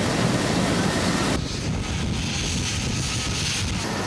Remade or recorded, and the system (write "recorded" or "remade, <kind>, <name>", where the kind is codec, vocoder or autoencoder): recorded